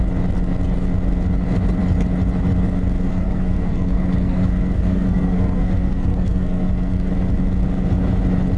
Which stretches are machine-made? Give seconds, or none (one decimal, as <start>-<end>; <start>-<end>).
3.1-7.1